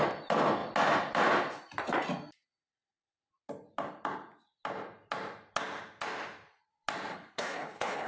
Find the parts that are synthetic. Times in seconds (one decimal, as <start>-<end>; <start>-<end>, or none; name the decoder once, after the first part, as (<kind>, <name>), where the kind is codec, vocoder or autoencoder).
7.1-8.1 (codec, HILCodec)